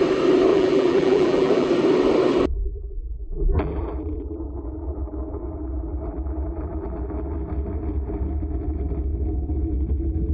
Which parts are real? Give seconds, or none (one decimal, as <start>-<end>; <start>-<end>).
0.0-0.5; 1.7-2.7; 7.2-10.3